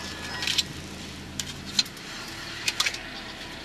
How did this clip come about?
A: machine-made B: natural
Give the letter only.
A